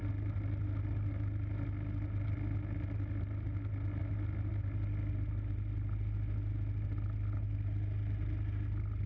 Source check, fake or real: real